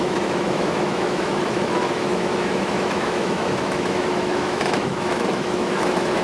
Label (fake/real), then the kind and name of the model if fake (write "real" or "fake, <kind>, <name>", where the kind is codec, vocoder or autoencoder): fake, autoencoder, DAC-VAE